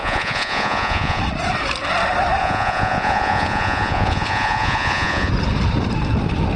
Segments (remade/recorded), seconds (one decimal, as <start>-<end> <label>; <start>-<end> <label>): 0.0-1.2 remade; 1.2-2.4 recorded; 2.4-5.3 remade; 5.3-6.6 recorded